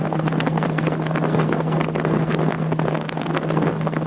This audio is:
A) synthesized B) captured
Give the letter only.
A